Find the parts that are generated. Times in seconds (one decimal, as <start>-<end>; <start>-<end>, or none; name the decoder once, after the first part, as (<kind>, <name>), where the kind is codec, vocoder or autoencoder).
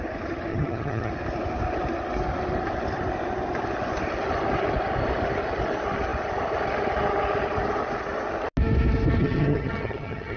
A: 0.5-1.1 (vocoder, HiFi-GAN); 9.2-10.4